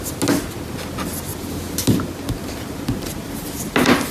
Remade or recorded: recorded